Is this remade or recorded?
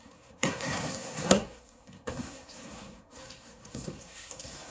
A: remade